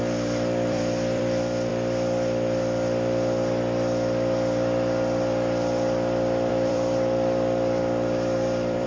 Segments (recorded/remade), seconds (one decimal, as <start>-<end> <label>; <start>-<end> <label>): 0.0-1.7 remade; 1.7-6.5 recorded; 6.5-8.9 remade